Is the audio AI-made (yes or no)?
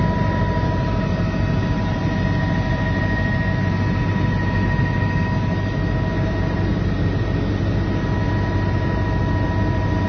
no